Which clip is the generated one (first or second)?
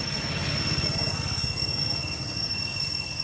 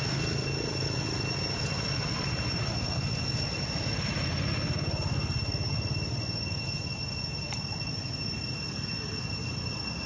first